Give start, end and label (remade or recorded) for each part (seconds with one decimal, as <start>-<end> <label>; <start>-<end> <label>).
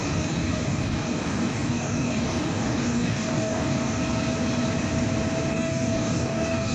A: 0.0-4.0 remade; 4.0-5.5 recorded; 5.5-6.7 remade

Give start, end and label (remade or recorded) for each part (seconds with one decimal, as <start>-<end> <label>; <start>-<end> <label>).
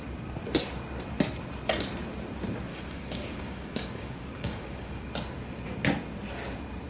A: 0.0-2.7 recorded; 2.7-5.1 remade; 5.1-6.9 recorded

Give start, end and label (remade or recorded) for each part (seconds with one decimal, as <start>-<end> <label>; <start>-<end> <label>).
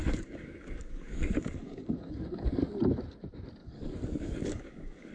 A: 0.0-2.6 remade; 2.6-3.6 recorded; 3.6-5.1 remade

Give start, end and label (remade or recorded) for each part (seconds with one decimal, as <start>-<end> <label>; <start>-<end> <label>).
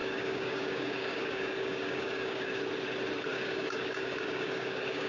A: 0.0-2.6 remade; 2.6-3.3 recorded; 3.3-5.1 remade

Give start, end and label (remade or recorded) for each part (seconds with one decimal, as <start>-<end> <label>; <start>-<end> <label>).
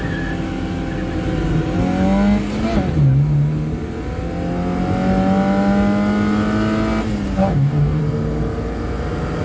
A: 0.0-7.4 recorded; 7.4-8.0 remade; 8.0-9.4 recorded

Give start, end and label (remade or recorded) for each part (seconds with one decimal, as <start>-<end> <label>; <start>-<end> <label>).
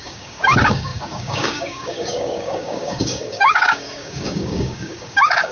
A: 0.0-5.5 remade